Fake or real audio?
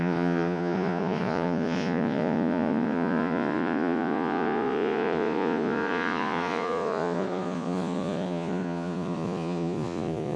fake